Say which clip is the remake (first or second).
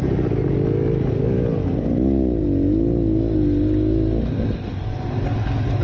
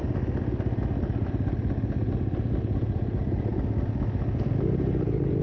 second